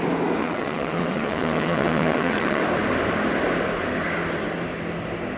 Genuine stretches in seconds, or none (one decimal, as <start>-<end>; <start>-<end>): 0.0-0.4; 2.6-5.4